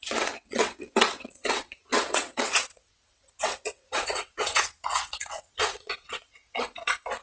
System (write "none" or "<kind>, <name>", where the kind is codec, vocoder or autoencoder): vocoder, WaveNeXt